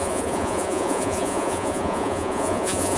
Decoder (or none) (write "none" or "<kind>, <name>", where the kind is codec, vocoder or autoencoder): vocoder, Vocos